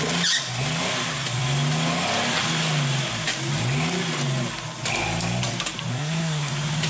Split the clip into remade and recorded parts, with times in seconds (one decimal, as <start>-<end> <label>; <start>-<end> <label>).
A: 0.0-5.9 recorded; 5.9-6.5 remade; 6.5-6.9 recorded